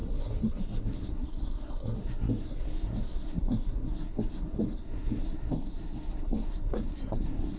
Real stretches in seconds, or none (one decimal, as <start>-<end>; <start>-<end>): none